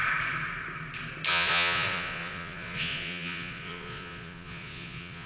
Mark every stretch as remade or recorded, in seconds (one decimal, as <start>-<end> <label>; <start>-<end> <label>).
0.0-1.3 recorded; 1.3-5.3 remade